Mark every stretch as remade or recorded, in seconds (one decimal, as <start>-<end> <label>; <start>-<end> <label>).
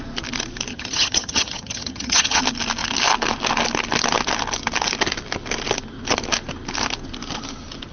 0.0-0.7 recorded; 0.7-2.4 remade; 2.4-7.9 recorded